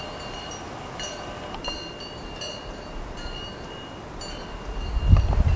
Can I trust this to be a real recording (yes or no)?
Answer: yes